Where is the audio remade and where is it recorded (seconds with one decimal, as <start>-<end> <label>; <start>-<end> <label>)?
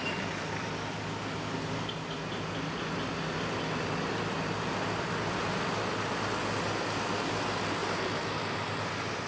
0.0-9.3 recorded